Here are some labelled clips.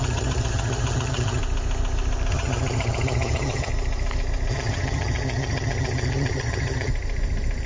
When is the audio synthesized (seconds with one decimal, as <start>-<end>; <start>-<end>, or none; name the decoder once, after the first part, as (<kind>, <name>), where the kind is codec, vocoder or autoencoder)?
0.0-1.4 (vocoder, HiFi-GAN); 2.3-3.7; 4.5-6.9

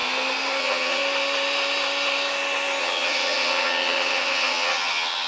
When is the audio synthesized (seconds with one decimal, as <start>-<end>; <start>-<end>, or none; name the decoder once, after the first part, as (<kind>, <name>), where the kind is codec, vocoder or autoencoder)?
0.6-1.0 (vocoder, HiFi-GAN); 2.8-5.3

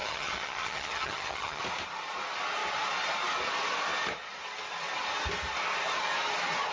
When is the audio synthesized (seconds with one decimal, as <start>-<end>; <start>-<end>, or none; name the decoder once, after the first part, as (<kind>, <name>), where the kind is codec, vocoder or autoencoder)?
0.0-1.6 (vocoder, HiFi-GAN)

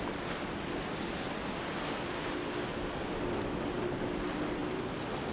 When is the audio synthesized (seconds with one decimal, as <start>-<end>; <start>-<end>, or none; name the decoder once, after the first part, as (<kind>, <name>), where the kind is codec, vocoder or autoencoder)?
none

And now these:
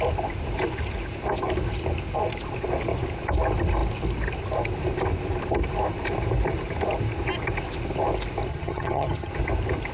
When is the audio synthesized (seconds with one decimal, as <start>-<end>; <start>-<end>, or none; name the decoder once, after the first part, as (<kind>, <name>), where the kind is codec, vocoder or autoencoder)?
8.5-9.3 (vocoder, HiFi-GAN)